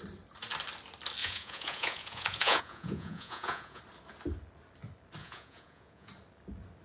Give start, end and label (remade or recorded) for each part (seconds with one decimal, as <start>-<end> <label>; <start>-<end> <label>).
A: 0.0-1.2 recorded; 1.2-3.8 remade; 3.8-5.2 recorded; 5.2-6.1 remade; 6.1-6.8 recorded